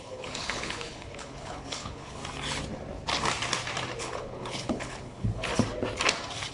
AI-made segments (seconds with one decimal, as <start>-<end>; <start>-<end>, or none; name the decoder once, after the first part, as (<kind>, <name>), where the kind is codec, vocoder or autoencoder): 0.0-2.2 (codec, HILCodec); 4.0-5.5